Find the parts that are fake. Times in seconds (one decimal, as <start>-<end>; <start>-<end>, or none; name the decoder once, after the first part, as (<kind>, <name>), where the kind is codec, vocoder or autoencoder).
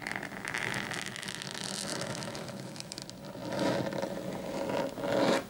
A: 1.9-3.0 (autoencoder, DAC-VAE)